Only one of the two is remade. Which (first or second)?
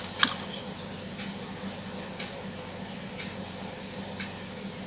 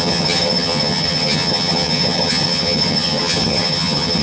second